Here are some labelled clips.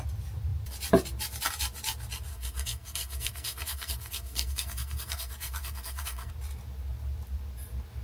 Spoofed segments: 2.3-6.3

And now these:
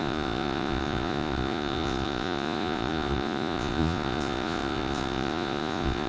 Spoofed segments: 0.0-6.1

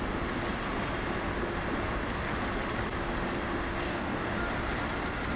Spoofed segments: 3.8-4.3

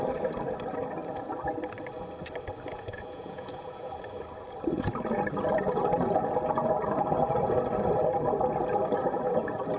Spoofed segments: 2.7-3.9

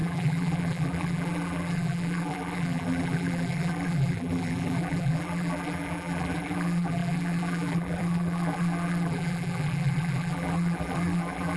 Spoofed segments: 0.0-11.6

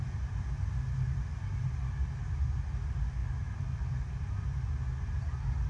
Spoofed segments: none